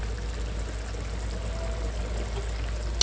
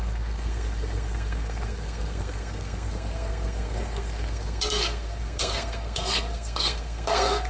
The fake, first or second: second